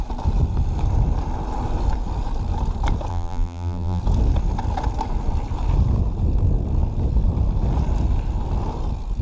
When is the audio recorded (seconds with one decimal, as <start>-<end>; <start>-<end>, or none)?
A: 0.0-3.1; 4.0-9.2